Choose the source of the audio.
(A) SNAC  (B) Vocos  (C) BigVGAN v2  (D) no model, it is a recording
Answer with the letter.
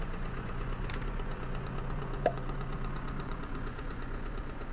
B